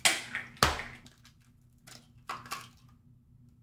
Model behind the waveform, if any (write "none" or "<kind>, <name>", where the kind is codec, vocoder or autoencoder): none